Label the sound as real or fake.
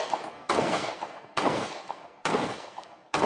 fake